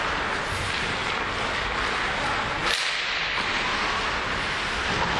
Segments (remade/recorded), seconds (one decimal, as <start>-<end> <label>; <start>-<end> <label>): 0.0-5.2 recorded